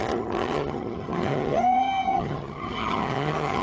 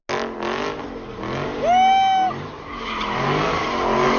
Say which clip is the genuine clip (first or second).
second